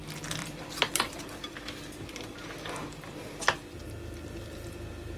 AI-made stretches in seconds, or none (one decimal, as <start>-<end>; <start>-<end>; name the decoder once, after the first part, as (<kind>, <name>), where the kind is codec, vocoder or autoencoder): 0.4-1.2 (vocoder, BigVGAN v2)